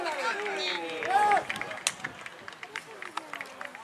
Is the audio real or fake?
real